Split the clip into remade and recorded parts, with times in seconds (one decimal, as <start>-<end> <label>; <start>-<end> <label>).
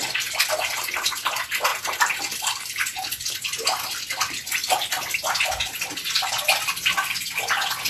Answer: 0.0-7.9 recorded